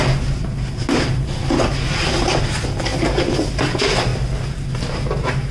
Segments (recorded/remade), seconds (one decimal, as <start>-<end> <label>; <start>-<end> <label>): 0.0-5.5 recorded